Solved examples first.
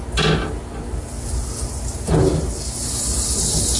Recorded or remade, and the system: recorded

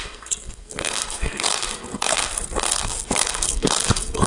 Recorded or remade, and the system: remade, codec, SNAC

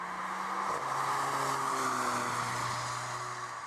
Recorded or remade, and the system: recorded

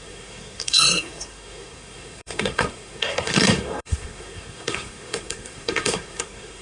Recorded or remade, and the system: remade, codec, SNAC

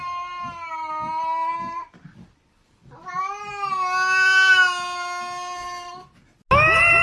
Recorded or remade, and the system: recorded